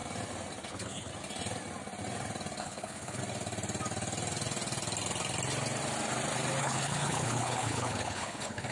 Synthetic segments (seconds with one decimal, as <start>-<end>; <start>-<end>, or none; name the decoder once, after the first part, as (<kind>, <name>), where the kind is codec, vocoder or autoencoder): 0.7-1.1 (codec, HILCodec); 2.6-3.2; 6.6-8.7